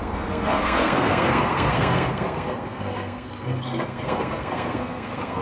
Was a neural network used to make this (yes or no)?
yes